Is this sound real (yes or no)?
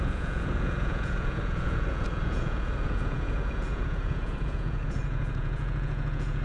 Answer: no